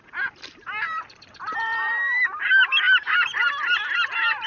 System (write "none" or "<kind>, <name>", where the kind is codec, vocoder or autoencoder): vocoder, BigVGAN v2